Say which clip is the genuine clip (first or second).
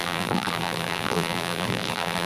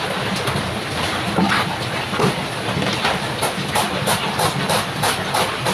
second